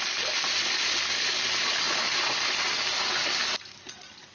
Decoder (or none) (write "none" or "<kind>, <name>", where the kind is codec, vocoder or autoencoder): none